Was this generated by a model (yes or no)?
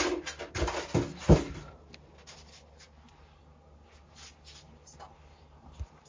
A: no